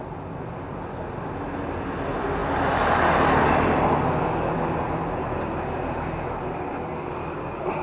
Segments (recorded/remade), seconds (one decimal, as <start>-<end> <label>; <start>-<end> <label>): 0.0-7.8 recorded